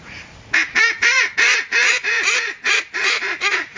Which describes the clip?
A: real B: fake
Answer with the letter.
B